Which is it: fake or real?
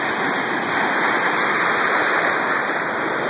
real